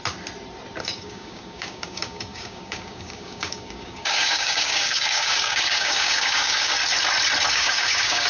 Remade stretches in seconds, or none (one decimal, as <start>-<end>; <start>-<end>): 0.8-6.8; 7.5-8.3